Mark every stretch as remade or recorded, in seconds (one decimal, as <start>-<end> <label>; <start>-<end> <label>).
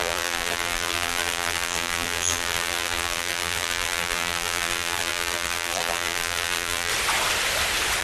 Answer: 0.0-6.9 remade; 6.9-8.0 recorded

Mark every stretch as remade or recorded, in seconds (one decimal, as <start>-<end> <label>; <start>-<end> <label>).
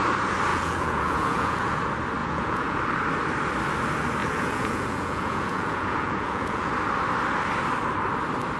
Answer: 0.0-0.5 recorded; 0.5-1.8 remade; 1.8-2.2 recorded; 2.2-2.8 remade; 2.8-4.2 recorded; 4.2-6.7 remade; 6.7-8.6 recorded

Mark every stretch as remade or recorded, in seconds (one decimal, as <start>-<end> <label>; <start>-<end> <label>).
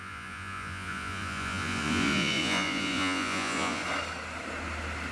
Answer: 0.0-3.8 remade; 3.8-5.1 recorded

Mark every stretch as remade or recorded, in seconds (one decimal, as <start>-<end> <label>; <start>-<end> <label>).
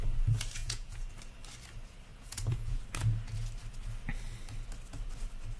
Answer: 0.0-0.6 recorded; 0.6-1.1 remade; 1.1-2.1 recorded; 2.1-2.8 remade; 2.8-5.6 recorded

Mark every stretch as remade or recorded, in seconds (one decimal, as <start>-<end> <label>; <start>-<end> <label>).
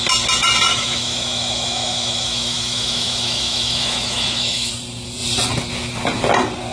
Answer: 0.0-0.7 recorded; 0.7-4.7 remade; 4.7-6.7 recorded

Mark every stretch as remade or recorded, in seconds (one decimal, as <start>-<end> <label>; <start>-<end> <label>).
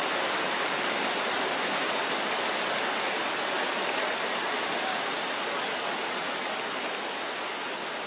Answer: 0.0-8.1 recorded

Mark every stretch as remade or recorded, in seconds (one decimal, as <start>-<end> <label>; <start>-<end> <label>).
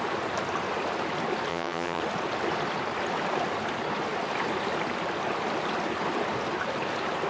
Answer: 0.0-1.5 recorded; 1.5-2.0 remade; 2.0-7.3 recorded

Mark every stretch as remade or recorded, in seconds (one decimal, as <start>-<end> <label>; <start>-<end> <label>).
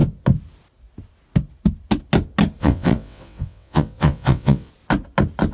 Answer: 0.0-2.6 recorded; 2.6-4.7 remade; 4.7-5.5 recorded